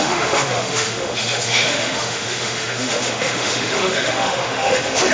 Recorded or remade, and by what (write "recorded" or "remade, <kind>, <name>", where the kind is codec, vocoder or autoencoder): remade, autoencoder, DAC-VAE